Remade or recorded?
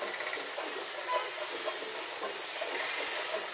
recorded